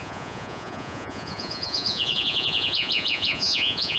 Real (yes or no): no